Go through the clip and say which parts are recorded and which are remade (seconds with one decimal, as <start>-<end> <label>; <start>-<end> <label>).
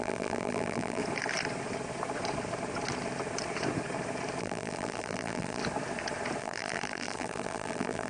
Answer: 0.0-1.0 remade; 1.0-4.4 recorded; 4.4-5.6 remade; 5.6-6.4 recorded; 6.4-8.1 remade